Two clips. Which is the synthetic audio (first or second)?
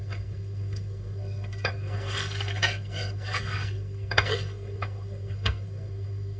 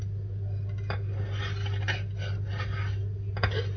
first